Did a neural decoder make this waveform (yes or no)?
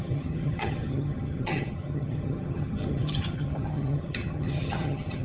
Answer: yes